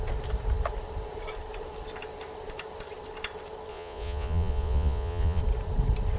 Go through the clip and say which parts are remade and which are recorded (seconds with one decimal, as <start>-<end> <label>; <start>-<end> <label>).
0.0-3.7 recorded; 3.7-5.4 remade; 5.4-6.2 recorded